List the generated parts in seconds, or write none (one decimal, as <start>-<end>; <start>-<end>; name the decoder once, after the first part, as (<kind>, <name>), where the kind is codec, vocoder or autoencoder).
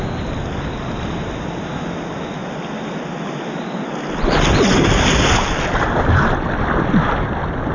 none